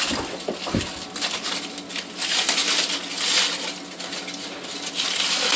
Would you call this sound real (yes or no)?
yes